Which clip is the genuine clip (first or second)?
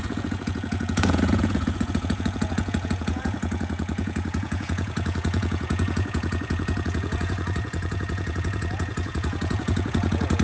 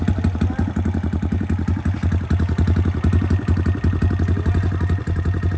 second